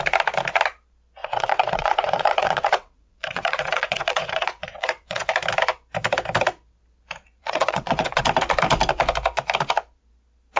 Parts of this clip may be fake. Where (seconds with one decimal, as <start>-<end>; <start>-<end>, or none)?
1.2-5.3; 7.4-8.2